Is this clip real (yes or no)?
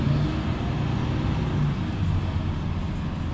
yes